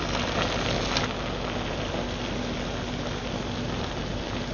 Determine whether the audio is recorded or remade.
recorded